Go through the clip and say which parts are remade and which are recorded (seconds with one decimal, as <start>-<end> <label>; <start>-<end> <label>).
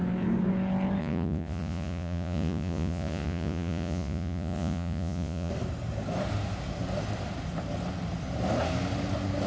0.0-1.0 recorded; 1.0-5.5 remade; 5.5-9.5 recorded